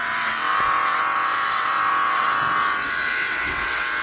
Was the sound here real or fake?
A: fake